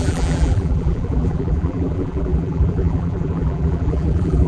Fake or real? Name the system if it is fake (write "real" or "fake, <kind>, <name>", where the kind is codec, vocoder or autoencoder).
fake, vocoder, BigVGAN v2